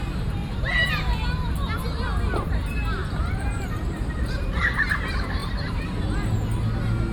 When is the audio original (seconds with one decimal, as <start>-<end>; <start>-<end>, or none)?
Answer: 0.0-0.4; 0.9-3.0; 4.6-5.4; 6.0-7.1